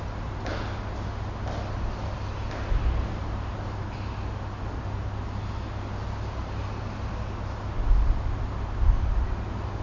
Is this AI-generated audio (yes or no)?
no